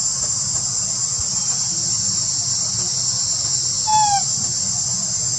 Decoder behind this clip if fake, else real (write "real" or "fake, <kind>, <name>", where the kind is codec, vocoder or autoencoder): real